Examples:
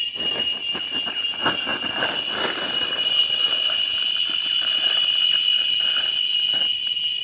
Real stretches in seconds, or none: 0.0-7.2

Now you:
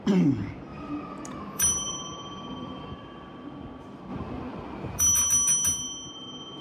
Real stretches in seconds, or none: 0.0-0.7; 2.9-6.6

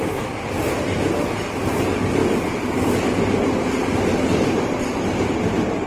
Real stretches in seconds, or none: 0.0-2.2

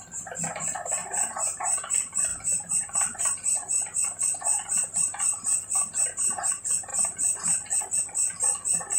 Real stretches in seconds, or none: 0.0-1.0; 1.9-2.3; 6.5-6.9; 7.8-9.0